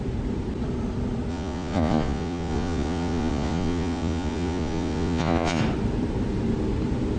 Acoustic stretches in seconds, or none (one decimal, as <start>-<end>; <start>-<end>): 0.0-1.3; 5.6-7.2